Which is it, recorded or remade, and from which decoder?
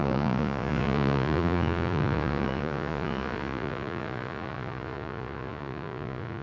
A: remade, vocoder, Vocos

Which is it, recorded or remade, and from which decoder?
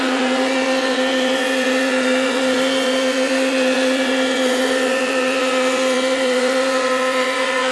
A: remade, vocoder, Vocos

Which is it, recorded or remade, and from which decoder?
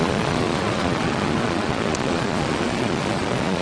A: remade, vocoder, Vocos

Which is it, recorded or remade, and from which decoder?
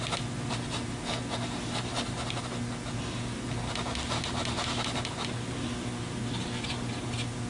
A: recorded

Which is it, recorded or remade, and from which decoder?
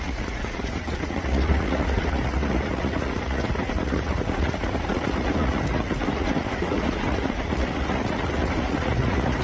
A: remade, vocoder, Vocos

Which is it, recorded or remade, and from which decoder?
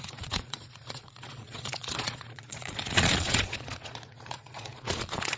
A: remade, vocoder, Vocos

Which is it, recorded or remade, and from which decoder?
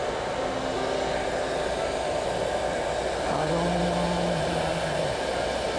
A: recorded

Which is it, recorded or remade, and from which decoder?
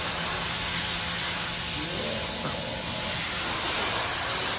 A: recorded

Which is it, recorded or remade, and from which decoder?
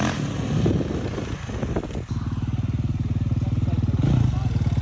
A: recorded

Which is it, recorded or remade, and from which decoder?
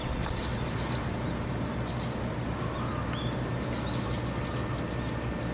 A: recorded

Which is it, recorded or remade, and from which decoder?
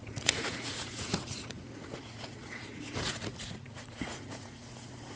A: remade, vocoder, Vocos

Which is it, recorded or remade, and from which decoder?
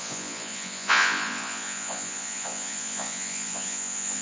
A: remade, vocoder, Vocos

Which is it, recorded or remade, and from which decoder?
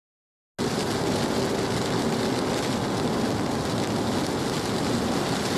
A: recorded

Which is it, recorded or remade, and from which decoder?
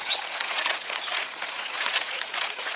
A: remade, vocoder, Vocos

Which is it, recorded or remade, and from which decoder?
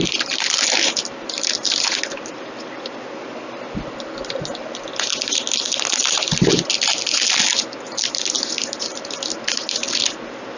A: recorded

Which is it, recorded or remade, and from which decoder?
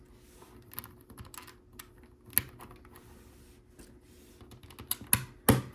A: recorded